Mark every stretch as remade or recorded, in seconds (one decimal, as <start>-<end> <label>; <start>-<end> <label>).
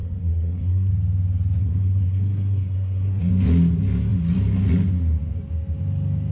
0.0-0.9 remade; 0.9-1.6 recorded; 1.6-3.3 remade; 3.3-6.3 recorded